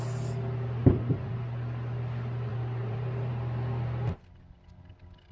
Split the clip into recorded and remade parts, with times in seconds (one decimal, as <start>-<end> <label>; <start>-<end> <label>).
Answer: 0.0-0.8 recorded; 0.8-1.3 remade; 1.3-2.5 recorded; 2.5-3.3 remade; 3.3-5.3 recorded